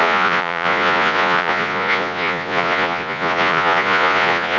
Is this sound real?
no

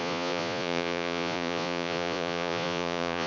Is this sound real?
no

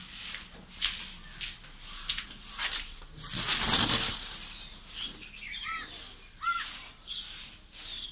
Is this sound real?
yes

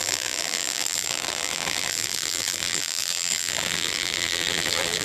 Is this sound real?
no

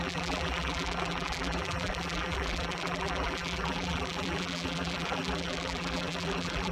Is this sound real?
no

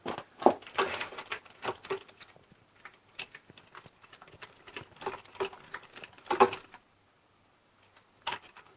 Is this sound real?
no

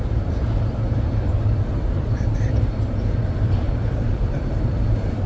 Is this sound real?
no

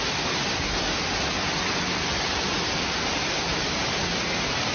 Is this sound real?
yes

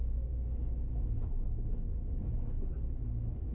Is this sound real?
yes